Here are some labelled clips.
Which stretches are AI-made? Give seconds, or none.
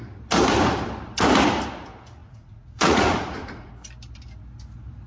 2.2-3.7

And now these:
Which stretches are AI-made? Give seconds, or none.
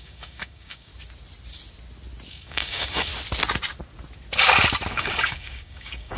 0.0-0.9; 2.3-3.1; 4.9-6.2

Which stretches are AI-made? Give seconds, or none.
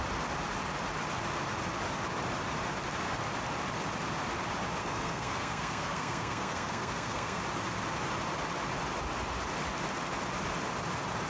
4.8-7.4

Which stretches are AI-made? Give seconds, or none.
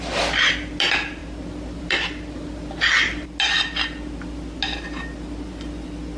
none